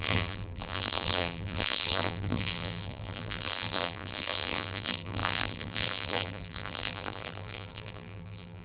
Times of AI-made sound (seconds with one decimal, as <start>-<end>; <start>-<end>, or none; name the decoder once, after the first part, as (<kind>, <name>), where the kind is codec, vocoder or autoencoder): 0.0-8.6 (vocoder, BigVGAN v2)